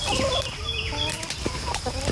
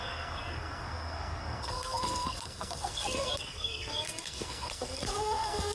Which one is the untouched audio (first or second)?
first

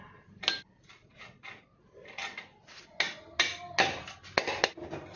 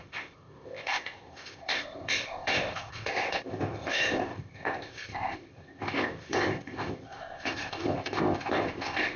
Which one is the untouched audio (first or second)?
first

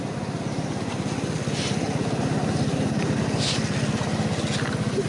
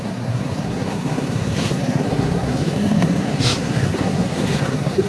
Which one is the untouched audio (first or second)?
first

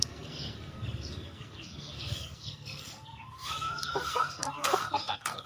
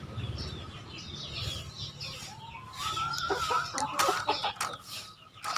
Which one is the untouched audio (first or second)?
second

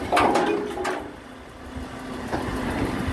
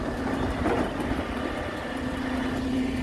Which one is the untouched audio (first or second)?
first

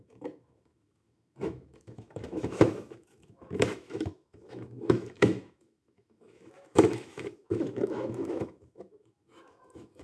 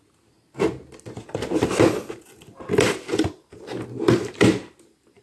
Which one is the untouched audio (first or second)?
second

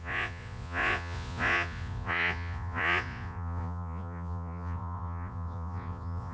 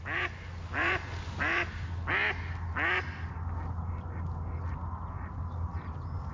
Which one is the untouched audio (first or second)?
second